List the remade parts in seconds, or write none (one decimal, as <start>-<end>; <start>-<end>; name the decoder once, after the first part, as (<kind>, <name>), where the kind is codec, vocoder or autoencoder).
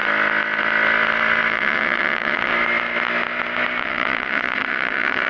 1.5-2.5 (vocoder, WaveNeXt); 3.8-5.3